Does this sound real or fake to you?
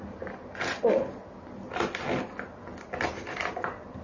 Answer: real